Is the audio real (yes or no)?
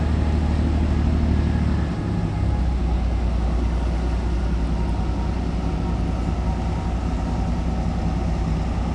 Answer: yes